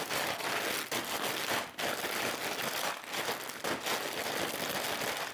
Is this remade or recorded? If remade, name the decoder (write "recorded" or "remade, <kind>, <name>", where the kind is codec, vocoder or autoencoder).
recorded